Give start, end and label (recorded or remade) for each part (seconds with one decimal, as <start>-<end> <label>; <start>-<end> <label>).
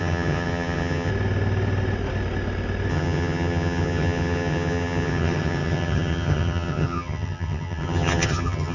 0.0-1.1 remade; 1.1-2.9 recorded; 2.9-8.7 remade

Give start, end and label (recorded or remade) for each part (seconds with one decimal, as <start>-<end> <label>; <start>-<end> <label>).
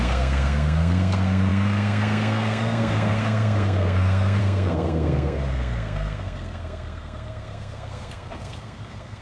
0.0-9.2 remade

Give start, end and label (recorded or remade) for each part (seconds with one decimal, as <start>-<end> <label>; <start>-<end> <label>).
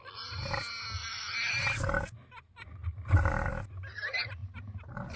0.0-1.1 recorded; 1.1-1.6 remade; 1.6-5.2 recorded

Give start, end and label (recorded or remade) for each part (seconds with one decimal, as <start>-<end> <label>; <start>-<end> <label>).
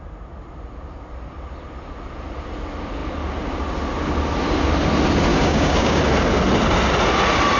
0.0-5.3 recorded; 5.3-6.0 remade; 6.0-7.6 recorded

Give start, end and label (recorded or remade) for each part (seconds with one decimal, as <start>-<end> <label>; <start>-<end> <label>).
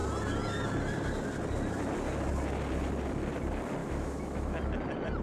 0.0-3.8 recorded; 3.8-4.6 remade; 4.6-5.2 recorded